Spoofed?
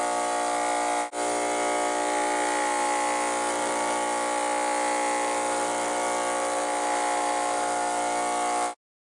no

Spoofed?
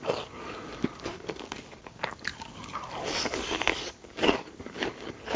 yes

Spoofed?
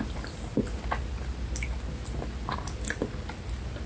no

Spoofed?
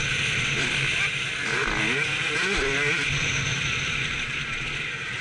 no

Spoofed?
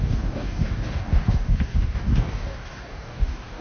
yes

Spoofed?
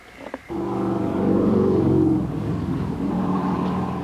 yes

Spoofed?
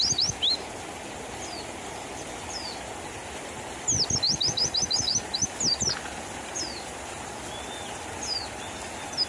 no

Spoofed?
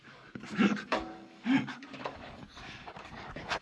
yes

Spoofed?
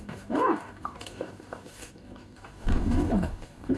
yes